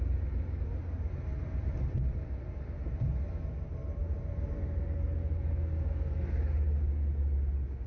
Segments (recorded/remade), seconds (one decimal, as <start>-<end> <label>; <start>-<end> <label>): 0.0-7.9 recorded